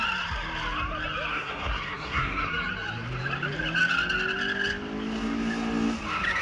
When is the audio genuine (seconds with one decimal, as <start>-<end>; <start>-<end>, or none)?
0.0-1.3; 2.5-6.4

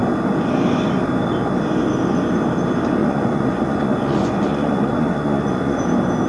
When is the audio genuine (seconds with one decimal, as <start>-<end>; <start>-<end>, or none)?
0.0-3.0; 5.8-6.3